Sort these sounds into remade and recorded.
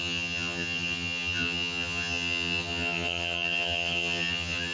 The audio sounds remade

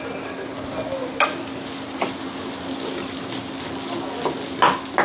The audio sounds recorded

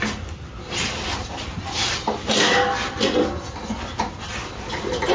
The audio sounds recorded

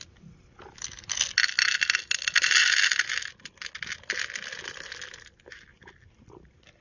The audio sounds recorded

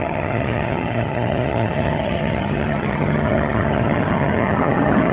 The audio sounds remade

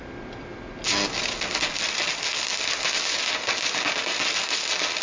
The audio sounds recorded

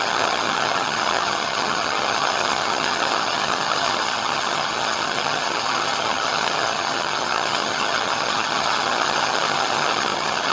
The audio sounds remade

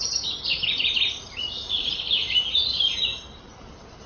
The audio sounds recorded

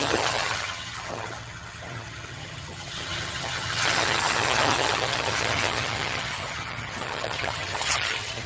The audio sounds remade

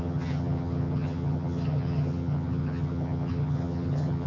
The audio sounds remade